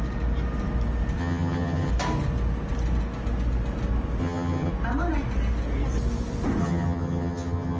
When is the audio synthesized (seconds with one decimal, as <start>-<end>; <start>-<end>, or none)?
1.2-1.9; 4.2-4.7; 6.6-7.8